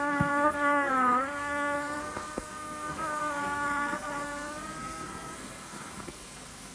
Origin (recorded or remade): remade